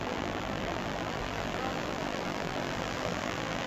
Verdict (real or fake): fake